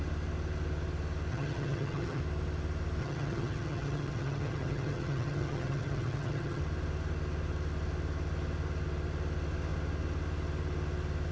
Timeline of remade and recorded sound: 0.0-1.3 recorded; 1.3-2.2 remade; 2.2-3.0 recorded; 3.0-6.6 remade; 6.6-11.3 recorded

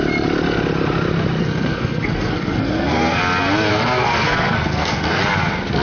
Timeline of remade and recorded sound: 0.0-1.4 recorded; 1.4-3.2 remade; 3.2-3.7 recorded; 3.7-5.2 remade; 5.2-5.8 recorded

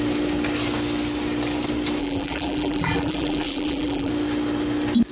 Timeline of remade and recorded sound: 0.0-2.0 recorded; 2.0-4.1 remade; 4.1-5.1 recorded

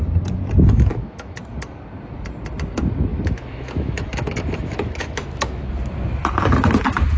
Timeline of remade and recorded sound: 0.0-0.9 recorded; 0.9-1.4 remade; 1.4-3.1 recorded; 3.1-5.7 remade; 5.7-7.2 recorded

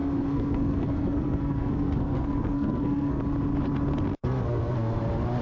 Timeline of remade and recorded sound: 0.0-3.2 remade; 3.2-4.1 recorded; 4.1-5.0 remade; 5.0-5.4 recorded

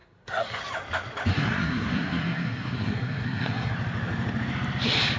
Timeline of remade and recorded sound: 0.0-0.6 remade; 0.6-1.3 recorded; 1.3-3.7 remade; 3.7-5.2 recorded